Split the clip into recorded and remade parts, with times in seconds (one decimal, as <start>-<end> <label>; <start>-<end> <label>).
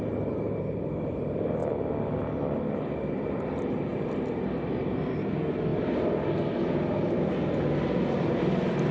0.0-3.9 remade; 3.9-4.8 recorded; 4.8-5.7 remade; 5.7-8.2 recorded; 8.2-8.9 remade